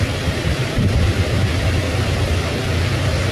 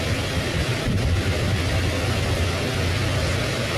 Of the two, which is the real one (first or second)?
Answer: second